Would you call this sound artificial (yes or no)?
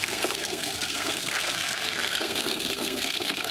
yes